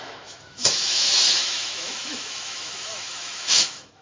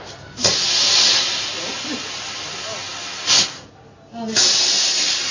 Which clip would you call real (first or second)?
second